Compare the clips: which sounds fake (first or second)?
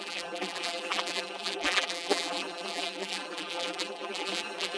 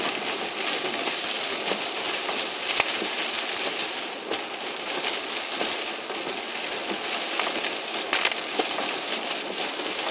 first